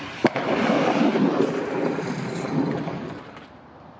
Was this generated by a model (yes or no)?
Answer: no